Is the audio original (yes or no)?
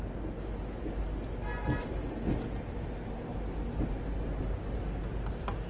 yes